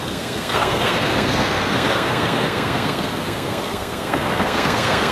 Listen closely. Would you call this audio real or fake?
fake